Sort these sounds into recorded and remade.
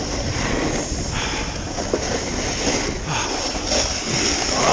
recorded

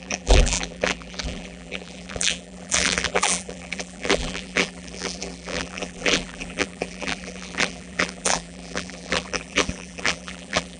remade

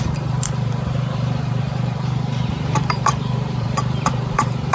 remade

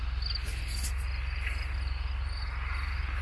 recorded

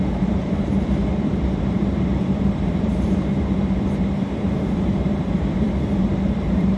remade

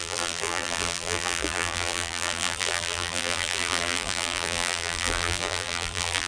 remade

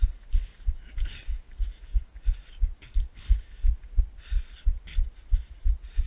recorded